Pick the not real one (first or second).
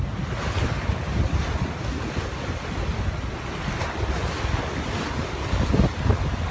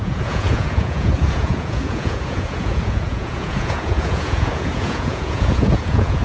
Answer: second